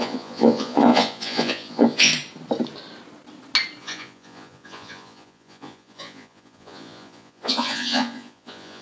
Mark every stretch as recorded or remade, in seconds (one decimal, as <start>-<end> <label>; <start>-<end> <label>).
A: 0.0-2.1 remade; 2.1-3.8 recorded; 3.8-8.8 remade